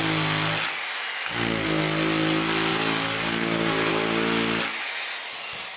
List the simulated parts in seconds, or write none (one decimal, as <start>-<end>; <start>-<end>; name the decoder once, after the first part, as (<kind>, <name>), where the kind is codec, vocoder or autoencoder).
2.7-3.9 (codec, DAC)